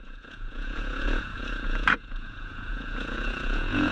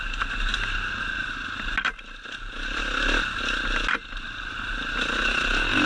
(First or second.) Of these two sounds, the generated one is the first